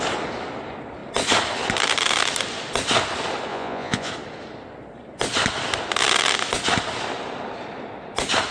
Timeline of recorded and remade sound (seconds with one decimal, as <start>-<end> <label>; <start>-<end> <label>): 0.0-3.5 recorded; 3.5-4.1 remade; 4.1-8.5 recorded